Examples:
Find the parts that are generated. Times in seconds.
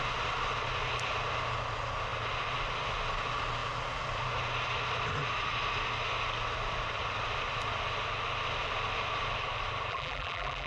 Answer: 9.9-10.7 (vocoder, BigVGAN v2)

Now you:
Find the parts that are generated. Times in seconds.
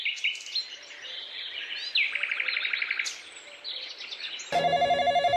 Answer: none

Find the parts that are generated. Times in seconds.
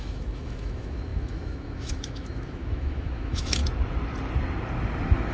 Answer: 0.0-3.6 (autoencoder, DAC-VAE)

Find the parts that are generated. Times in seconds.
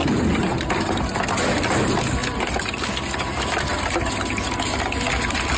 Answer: 0.0-1.5 (vocoder, BigVGAN v2); 2.2-4.3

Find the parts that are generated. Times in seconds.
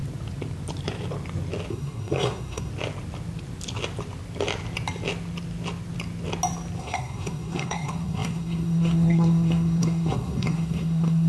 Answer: 1.7-2.7 (codec, SNAC); 6.8-11.3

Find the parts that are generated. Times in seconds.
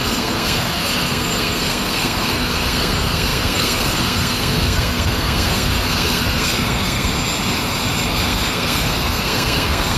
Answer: 0.0-7.1 (codec, SNAC); 8.1-10.0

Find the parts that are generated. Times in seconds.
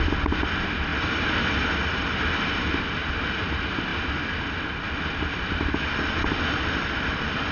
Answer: none